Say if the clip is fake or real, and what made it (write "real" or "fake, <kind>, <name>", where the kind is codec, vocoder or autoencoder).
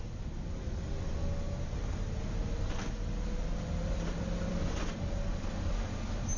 real